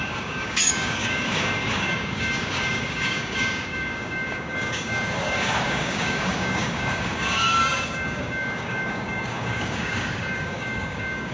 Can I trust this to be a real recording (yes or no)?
no